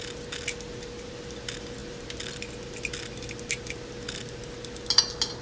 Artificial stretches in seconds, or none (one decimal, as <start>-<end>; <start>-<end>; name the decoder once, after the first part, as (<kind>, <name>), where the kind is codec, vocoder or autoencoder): none